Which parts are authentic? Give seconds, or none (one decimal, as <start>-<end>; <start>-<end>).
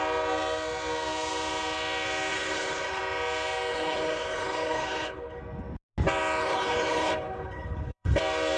0.0-2.3; 3.0-3.7; 5.4-6.4; 8.2-8.6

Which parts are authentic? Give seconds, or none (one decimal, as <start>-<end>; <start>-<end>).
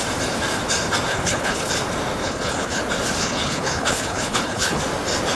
0.0-1.1; 1.7-2.2; 2.8-3.2; 4.8-5.3